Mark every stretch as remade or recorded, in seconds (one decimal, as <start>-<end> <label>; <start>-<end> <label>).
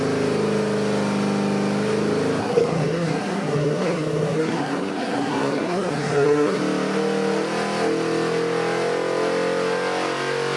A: 0.0-2.4 recorded; 2.4-6.6 remade; 6.6-10.6 recorded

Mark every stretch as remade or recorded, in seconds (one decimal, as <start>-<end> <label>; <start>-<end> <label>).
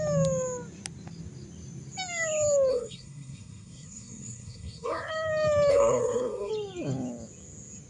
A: 0.0-2.7 recorded; 2.7-5.1 remade; 5.1-5.7 recorded; 5.7-6.5 remade; 6.5-7.9 recorded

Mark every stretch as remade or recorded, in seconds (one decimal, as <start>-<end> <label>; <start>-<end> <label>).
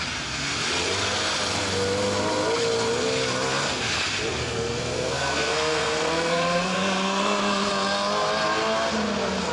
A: 0.0-4.3 recorded; 4.3-7.7 remade; 7.7-9.5 recorded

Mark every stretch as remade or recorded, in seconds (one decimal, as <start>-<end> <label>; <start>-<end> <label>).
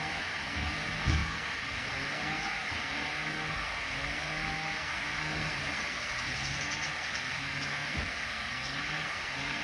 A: 0.0-9.6 remade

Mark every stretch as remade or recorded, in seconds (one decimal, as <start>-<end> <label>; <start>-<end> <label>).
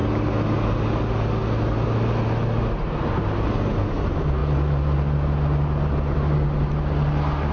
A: 0.0-7.5 recorded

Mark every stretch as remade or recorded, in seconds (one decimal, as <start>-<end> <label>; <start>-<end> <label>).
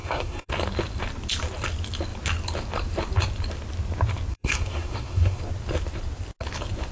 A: 0.0-0.5 remade; 0.5-4.3 recorded; 4.3-5.4 remade; 5.4-6.9 recorded